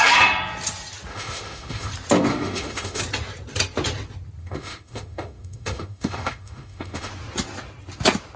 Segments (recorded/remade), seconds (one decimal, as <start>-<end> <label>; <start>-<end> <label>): 0.0-1.1 recorded; 1.1-1.9 remade; 1.9-2.3 recorded; 2.3-3.0 remade; 3.0-4.4 recorded; 4.4-7.1 remade; 7.1-8.4 recorded